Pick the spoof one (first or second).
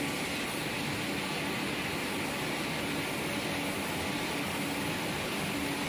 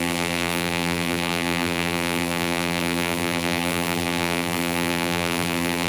second